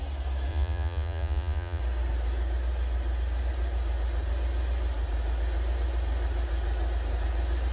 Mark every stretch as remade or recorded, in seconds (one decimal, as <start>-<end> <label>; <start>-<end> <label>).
0.0-0.5 recorded; 0.5-1.8 remade; 1.8-7.7 recorded